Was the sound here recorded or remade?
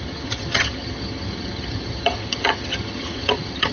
remade